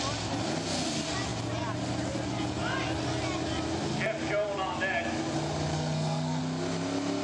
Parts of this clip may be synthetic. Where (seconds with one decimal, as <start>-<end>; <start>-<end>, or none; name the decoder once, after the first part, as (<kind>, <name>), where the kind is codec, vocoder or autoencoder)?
5.7-6.4 (codec, SNAC)

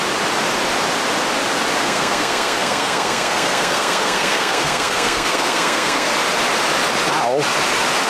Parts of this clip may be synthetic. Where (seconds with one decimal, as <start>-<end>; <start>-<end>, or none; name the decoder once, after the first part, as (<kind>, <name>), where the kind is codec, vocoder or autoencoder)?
1.8-6.1 (codec, SNAC)

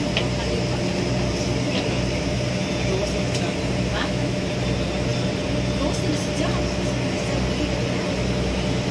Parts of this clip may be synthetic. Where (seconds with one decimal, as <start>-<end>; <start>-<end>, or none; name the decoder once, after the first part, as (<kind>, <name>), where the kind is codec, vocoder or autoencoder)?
3.9-4.5 (autoencoder, DAC-VAE)

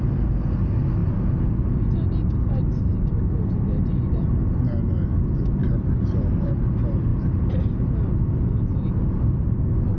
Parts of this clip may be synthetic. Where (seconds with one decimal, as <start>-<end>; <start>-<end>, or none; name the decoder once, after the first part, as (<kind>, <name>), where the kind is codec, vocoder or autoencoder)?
5.6-6.5 (vocoder, BigVGAN v2)

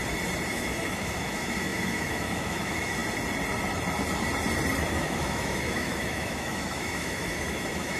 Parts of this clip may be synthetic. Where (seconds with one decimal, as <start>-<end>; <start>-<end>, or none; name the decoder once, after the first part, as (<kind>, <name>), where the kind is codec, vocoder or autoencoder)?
0.5-3.0 (autoencoder, DAC-VAE); 4.9-8.0